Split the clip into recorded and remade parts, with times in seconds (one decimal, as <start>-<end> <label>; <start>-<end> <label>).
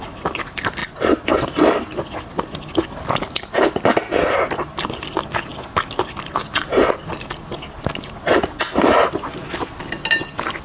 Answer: 0.0-10.6 recorded